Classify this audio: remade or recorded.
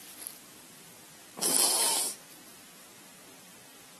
recorded